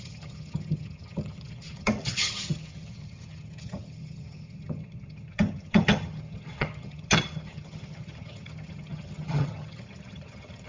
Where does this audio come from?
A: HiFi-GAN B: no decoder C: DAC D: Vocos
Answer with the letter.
A